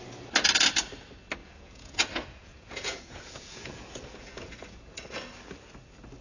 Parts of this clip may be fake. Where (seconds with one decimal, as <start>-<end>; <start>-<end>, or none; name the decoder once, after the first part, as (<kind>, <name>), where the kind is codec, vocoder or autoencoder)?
1.4-4.8 (vocoder, Vocos)